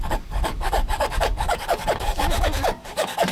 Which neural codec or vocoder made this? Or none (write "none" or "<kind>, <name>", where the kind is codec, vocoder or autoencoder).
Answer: codec, DAC